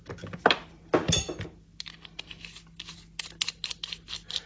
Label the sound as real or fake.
real